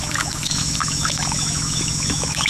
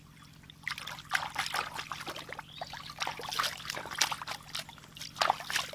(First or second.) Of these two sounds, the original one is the second